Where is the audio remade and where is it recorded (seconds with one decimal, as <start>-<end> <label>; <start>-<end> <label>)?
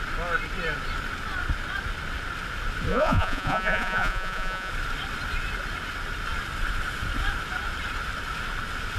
0.0-2.9 recorded; 2.9-4.7 remade; 4.7-9.0 recorded